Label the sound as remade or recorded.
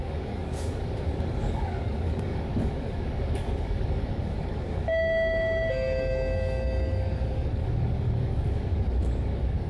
remade